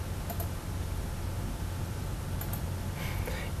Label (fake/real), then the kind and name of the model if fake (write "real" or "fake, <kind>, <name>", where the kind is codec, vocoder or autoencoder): real